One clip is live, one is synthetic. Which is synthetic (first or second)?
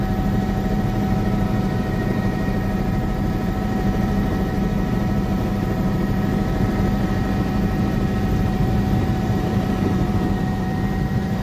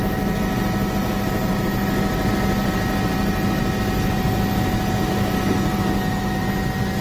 first